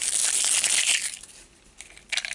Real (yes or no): yes